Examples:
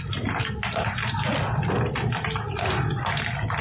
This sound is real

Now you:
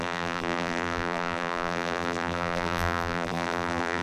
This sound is fake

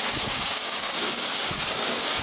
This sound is fake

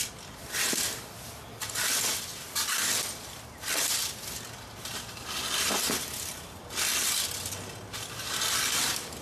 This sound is fake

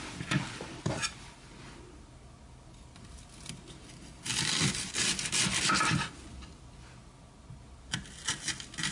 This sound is real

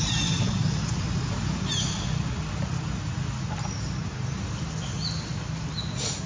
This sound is real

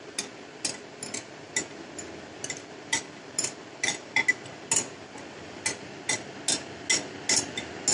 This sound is real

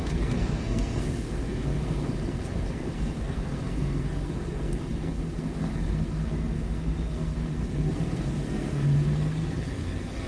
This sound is fake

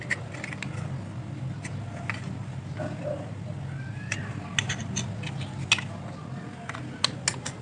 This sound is real